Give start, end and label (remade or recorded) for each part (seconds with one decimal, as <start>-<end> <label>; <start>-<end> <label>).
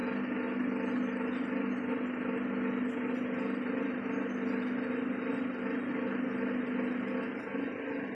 0.0-8.1 recorded